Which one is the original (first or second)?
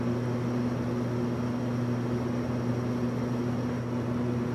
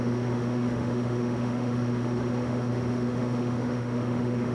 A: first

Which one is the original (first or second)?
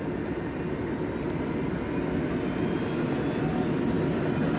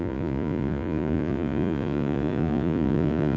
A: first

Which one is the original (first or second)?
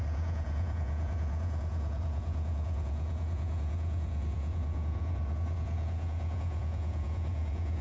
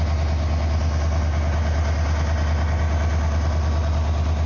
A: second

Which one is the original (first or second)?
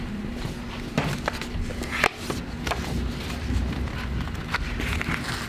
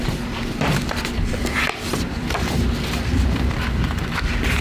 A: first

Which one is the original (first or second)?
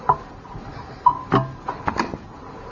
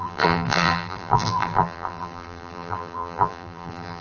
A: first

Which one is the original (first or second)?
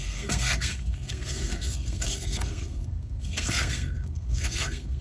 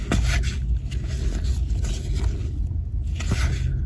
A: second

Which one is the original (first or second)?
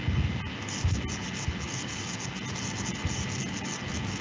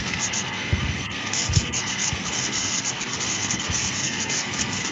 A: first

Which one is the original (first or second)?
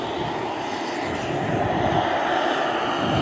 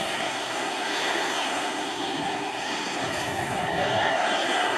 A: first